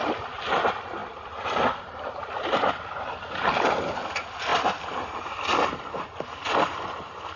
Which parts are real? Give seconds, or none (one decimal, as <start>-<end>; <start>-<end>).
0.0-1.0; 3.0-7.4